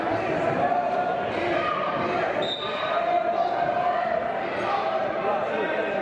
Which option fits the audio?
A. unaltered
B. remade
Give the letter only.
B